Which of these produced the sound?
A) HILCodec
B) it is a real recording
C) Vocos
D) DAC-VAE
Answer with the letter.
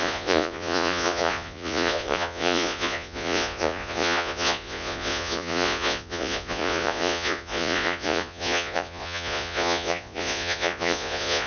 C